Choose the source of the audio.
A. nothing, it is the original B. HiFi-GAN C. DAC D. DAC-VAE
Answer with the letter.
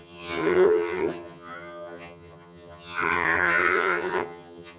B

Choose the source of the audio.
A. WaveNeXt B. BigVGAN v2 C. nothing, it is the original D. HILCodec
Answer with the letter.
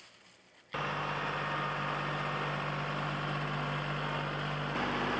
C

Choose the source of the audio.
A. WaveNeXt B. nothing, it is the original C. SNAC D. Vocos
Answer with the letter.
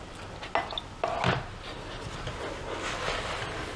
B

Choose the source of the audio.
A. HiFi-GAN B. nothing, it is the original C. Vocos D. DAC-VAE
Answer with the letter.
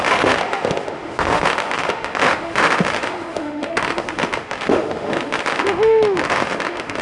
D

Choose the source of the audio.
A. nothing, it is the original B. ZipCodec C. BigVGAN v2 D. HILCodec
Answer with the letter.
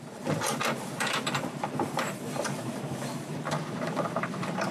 C